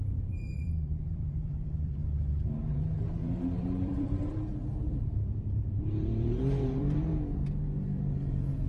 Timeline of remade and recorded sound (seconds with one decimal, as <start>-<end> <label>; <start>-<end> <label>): 0.0-2.0 remade; 2.0-2.6 recorded; 2.6-7.1 remade; 7.1-8.1 recorded; 8.1-8.7 remade